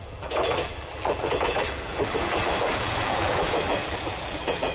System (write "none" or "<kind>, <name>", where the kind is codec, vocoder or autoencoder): vocoder, BigVGAN v2